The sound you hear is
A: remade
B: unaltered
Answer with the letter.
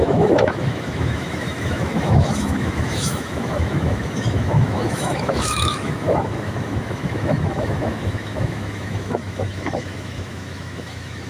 A